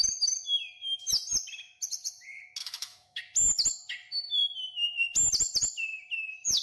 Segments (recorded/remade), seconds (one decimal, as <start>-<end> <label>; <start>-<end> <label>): 0.0-2.6 recorded; 2.6-3.2 remade; 3.2-6.6 recorded